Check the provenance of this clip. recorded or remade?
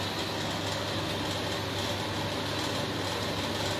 recorded